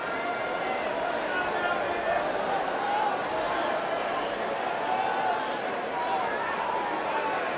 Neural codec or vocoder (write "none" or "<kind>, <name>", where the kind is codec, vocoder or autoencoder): none